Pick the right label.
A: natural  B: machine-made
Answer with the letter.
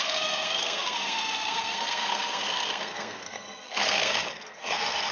B